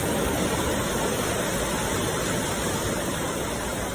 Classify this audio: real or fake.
real